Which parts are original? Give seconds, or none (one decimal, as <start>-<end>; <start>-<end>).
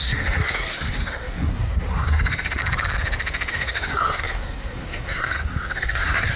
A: 2.6-3.5